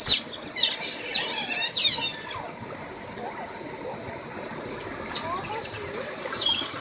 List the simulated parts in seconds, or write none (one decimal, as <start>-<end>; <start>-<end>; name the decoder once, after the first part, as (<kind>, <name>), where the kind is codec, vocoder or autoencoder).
none